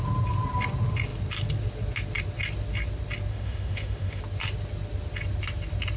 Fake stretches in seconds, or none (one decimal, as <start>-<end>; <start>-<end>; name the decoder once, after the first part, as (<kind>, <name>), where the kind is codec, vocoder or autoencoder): 3.3-4.2 (autoencoder, DAC-VAE)